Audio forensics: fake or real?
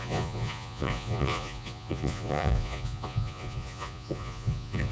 fake